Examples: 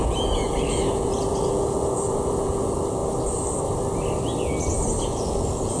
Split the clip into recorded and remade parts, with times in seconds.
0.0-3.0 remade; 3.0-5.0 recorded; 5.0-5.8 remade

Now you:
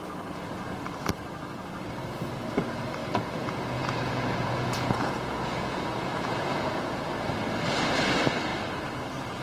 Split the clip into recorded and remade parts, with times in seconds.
0.0-3.0 recorded; 3.0-7.1 remade; 7.1-9.4 recorded

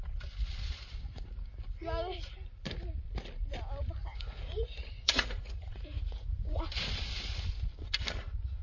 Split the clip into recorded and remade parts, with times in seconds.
0.0-4.0 recorded; 4.0-6.6 remade; 6.6-8.6 recorded

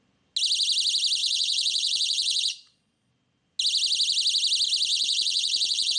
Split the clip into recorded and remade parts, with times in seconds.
0.0-1.2 recorded; 1.2-3.1 remade; 3.1-4.9 recorded; 4.9-6.0 remade

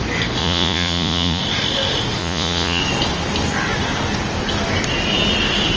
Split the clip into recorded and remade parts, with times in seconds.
0.0-0.4 recorded; 0.4-1.4 remade; 1.4-2.2 recorded; 2.2-2.8 remade; 2.8-5.8 recorded

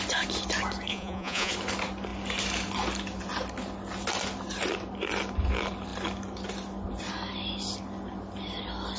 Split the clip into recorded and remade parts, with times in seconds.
0.0-0.9 recorded; 0.9-1.5 remade; 1.5-9.0 recorded